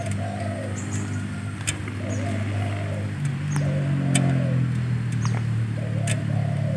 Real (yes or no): yes